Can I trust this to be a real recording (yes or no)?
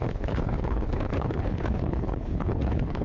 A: no